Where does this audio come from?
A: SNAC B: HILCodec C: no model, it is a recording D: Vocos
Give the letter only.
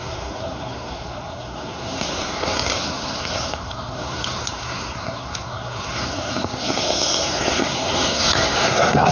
A